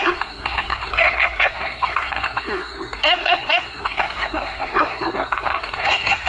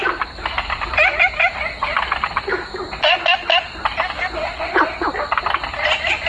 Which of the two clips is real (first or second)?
second